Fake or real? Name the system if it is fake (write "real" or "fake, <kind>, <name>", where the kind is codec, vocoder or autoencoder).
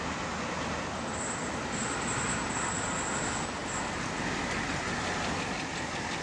real